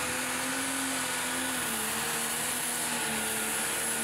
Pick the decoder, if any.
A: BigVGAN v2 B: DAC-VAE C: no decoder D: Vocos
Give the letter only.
C